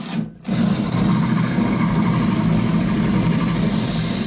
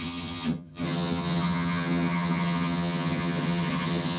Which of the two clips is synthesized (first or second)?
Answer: second